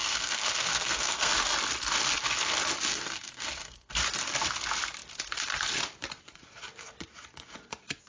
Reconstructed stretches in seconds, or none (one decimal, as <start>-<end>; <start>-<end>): 0.0-1.3; 2.9-3.9

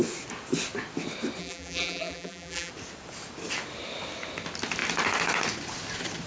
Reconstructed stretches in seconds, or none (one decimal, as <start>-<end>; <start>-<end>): 1.4-2.7